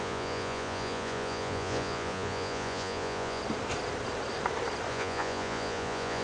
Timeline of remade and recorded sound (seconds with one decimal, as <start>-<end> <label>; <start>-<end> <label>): 0.0-3.4 remade; 3.4-4.9 recorded; 4.9-6.2 remade

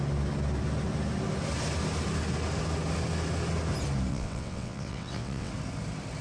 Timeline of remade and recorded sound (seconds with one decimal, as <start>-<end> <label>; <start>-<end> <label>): 0.0-4.1 recorded; 4.1-5.5 remade; 5.5-6.2 recorded

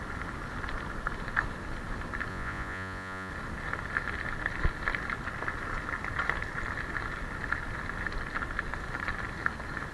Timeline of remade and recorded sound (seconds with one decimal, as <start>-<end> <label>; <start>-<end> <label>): 0.0-2.3 recorded; 2.3-3.3 remade; 3.3-9.9 recorded

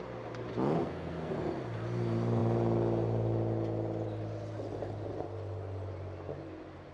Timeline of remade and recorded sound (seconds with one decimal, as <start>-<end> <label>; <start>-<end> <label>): 0.0-0.8 recorded; 0.8-1.3 remade; 1.3-6.9 recorded

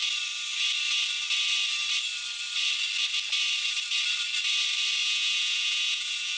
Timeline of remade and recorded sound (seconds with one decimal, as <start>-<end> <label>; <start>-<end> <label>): 0.0-5.0 recorded; 5.0-6.4 remade